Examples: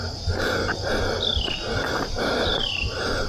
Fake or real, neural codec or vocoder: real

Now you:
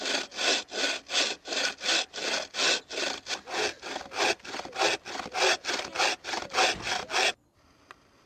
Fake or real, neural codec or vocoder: real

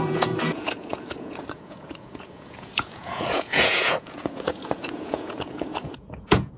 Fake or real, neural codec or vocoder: fake, vocoder, Vocos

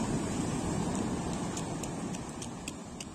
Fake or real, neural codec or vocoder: real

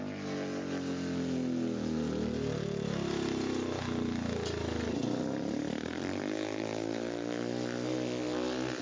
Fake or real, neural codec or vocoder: real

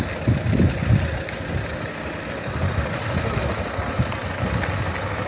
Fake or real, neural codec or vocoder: real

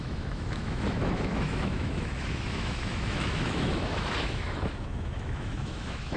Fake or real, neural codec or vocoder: fake, autoencoder, DAC-VAE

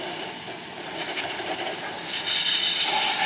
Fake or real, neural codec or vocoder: real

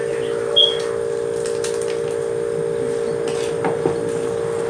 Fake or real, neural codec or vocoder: real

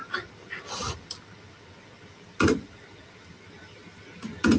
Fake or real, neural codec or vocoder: real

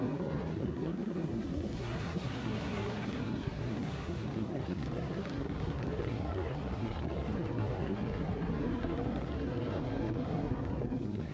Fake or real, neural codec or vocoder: fake, codec, SNAC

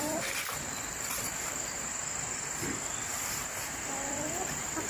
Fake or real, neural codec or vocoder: fake, vocoder, BigVGAN v2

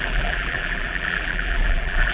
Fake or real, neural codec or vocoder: fake, vocoder, BigVGAN v2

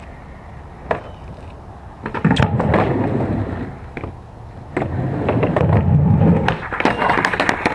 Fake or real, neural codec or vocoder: real